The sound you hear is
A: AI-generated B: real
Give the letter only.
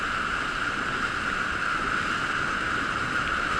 B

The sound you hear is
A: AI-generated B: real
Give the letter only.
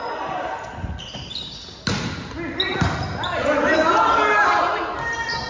B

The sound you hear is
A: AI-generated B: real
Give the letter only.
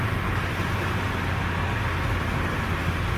B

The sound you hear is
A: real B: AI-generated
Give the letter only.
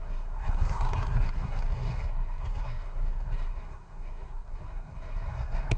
B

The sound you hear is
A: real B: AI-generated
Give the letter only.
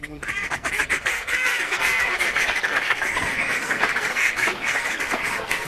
B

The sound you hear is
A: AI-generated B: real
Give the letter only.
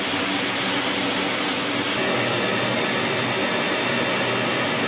B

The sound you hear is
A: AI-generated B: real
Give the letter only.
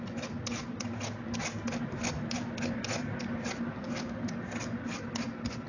B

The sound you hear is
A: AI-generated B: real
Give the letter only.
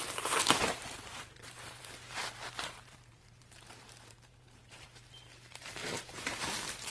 A